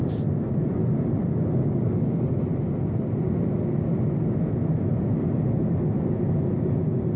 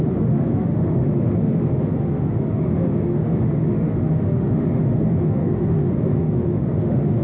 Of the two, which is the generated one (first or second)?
second